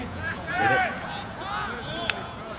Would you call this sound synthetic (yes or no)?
yes